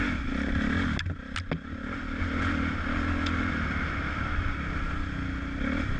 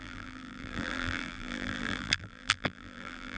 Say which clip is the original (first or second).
first